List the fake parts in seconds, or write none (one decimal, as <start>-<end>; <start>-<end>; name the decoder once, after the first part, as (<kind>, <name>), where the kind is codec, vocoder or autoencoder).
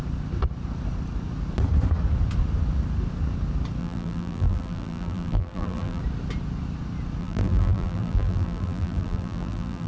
3.8-6.0 (vocoder, BigVGAN v2); 7.2-9.9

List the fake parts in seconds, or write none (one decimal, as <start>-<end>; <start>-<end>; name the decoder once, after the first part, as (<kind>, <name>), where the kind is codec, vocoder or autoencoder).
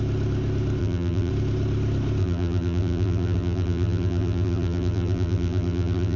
0.8-1.3 (vocoder, BigVGAN v2); 2.2-6.2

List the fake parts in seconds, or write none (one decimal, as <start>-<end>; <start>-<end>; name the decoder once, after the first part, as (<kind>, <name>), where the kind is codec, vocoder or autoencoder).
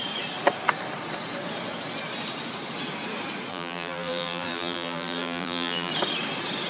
3.5-5.9 (vocoder, BigVGAN v2)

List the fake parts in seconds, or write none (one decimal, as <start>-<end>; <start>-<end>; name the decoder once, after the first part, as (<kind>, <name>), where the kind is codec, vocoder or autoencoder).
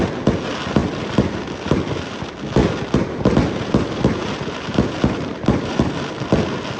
0.8-2.2 (vocoder, BigVGAN v2); 2.6-6.8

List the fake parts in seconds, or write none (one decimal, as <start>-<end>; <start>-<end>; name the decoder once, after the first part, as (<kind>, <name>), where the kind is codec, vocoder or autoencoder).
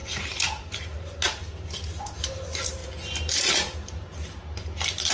0.0-1.4 (vocoder, BigVGAN v2); 2.2-2.8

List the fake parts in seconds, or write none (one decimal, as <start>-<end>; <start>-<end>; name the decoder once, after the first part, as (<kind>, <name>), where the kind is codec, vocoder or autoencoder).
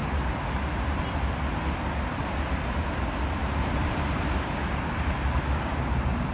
0.0-1.0 (vocoder, BigVGAN v2); 3.4-6.3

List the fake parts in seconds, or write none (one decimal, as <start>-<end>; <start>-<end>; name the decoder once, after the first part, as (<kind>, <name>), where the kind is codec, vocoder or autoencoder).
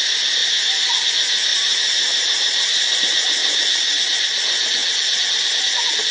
1.5-3.0 (vocoder, BigVGAN v2); 3.4-4.0